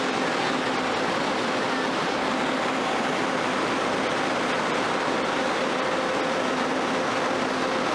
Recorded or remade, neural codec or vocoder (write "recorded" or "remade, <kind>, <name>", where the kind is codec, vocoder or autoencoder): recorded